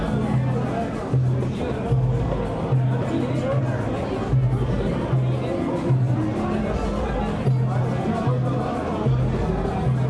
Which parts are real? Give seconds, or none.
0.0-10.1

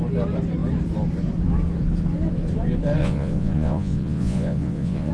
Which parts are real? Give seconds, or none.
0.0-3.0

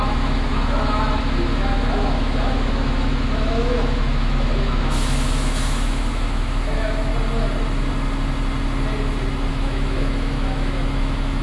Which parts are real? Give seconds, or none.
7.1-9.5

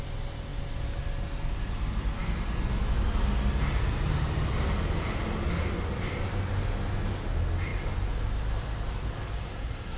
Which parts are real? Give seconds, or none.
0.0-9.4

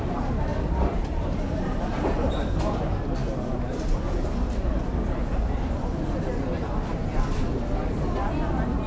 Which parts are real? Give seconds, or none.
0.0-0.5; 2.6-8.9

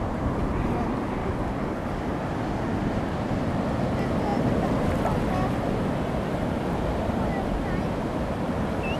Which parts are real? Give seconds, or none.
0.0-1.2; 2.0-9.0

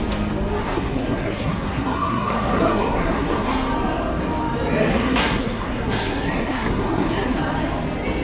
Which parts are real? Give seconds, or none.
0.0-0.6; 3.5-4.9; 7.4-8.2

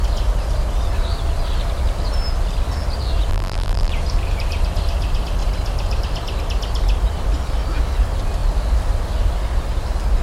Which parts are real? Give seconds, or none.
0.0-3.3; 3.9-10.2